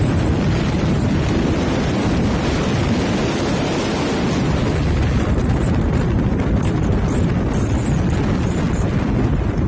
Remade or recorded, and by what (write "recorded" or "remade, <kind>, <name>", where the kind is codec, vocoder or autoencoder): recorded